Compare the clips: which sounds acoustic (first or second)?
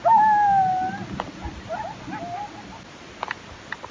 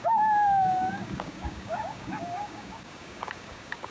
first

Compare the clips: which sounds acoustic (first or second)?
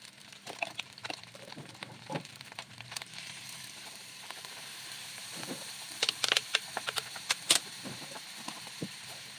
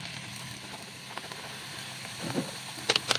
second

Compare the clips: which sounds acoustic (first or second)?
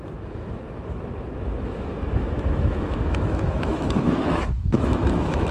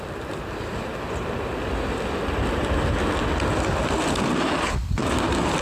second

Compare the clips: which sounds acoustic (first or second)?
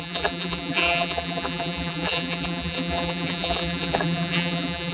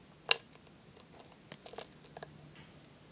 second